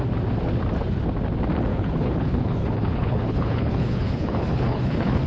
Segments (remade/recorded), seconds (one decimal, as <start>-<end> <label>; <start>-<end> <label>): 0.0-1.7 recorded; 1.7-5.3 remade